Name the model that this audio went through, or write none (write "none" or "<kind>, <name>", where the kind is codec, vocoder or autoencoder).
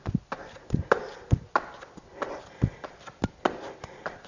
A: none